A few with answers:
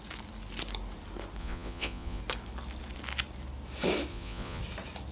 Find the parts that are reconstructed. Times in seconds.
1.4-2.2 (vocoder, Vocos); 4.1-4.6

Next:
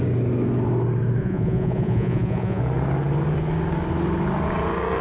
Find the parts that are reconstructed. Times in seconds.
1.2-2.6 (vocoder, Vocos)

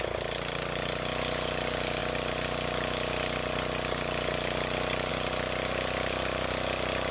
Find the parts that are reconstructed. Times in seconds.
none

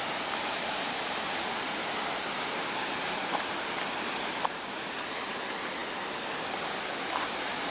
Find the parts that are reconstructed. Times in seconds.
none